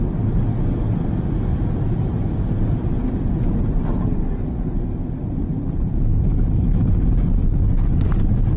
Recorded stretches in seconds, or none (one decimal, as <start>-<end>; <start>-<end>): 0.0-1.5; 6.5-8.6